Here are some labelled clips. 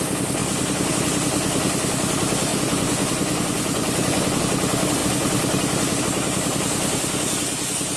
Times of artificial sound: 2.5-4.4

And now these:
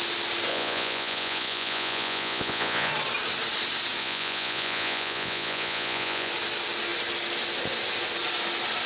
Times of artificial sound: 0.5-2.9; 4.0-6.3

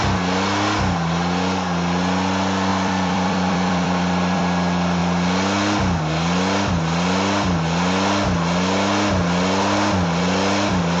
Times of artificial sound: 2.7-4.4

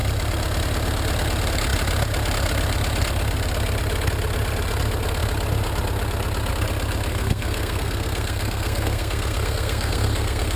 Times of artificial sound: 7.1-10.6

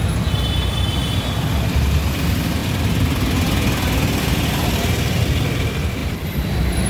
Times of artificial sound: none